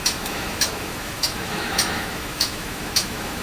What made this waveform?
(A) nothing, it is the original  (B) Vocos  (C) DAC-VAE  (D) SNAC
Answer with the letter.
C